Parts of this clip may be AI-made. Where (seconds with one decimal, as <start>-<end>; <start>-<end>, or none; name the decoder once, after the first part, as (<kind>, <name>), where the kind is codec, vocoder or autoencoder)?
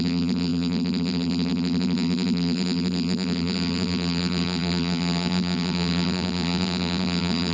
0.0-7.5 (vocoder, BigVGAN v2)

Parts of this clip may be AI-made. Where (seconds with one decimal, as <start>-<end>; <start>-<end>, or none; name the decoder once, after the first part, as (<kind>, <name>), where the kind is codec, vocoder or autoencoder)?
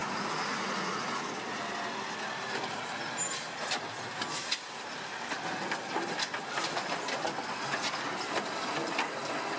0.0-1.3 (vocoder, Vocos)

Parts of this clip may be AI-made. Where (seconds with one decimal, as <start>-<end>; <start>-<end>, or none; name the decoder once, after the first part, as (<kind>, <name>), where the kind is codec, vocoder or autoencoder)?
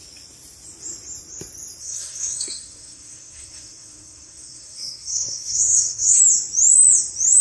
1.8-6.2 (codec, SNAC)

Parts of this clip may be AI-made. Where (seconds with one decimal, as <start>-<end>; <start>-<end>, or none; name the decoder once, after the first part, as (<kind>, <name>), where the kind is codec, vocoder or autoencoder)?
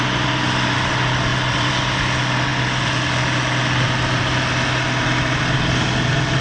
none